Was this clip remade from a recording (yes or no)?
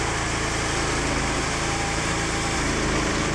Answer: yes